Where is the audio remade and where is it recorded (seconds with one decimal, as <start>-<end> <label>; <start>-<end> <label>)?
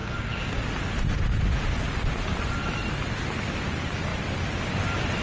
0.0-0.7 remade; 0.7-5.2 recorded